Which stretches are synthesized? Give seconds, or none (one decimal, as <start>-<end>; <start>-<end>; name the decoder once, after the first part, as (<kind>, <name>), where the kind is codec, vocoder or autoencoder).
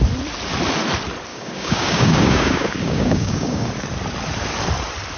1.3-3.7 (codec, DAC)